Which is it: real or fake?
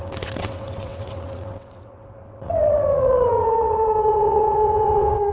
fake